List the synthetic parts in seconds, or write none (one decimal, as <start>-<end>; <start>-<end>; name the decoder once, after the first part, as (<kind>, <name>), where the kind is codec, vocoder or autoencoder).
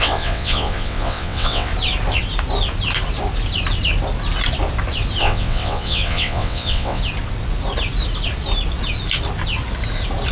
0.0-1.7 (vocoder, WaveNeXt); 5.2-7.0